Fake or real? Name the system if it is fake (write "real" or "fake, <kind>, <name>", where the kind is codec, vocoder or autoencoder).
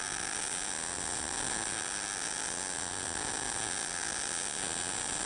real